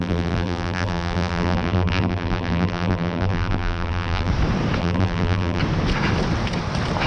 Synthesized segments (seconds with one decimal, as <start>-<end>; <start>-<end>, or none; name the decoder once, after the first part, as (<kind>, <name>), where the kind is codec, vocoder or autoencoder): 0.0-4.3 (vocoder, BigVGAN v2); 4.8-5.6